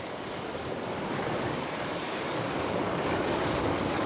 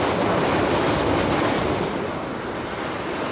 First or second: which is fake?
first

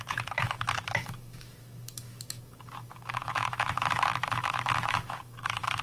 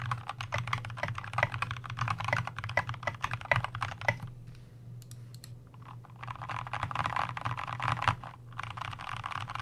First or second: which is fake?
first